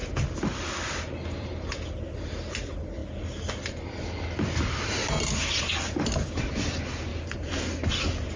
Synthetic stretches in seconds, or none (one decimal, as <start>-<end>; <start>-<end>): none